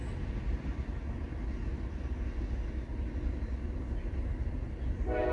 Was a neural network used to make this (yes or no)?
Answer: no